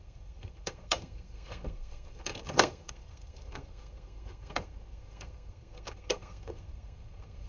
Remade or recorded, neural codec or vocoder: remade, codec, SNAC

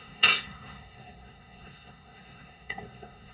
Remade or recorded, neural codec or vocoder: remade, codec, SNAC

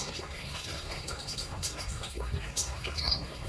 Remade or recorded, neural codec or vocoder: remade, codec, SNAC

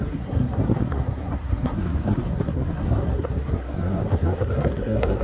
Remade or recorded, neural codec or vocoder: remade, codec, SNAC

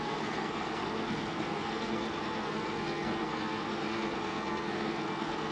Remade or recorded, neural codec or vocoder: remade, codec, SNAC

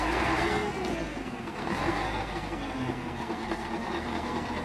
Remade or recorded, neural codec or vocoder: remade, codec, SNAC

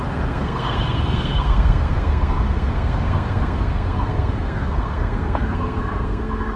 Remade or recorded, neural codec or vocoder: remade, codec, SNAC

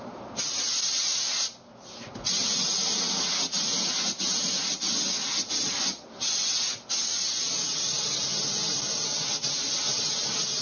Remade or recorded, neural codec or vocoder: recorded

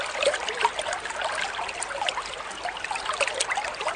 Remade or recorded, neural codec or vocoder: recorded